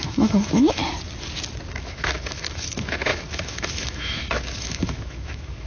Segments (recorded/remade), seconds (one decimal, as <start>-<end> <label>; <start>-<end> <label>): 0.0-0.8 remade; 0.8-1.7 recorded; 1.7-5.7 remade